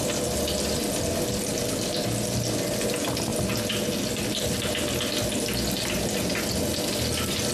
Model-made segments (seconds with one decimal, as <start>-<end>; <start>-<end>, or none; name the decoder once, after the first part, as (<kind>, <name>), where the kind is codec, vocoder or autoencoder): none